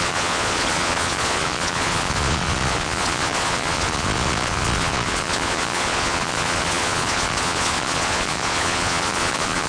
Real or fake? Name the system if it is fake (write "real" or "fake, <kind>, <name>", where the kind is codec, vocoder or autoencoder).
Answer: fake, vocoder, Vocos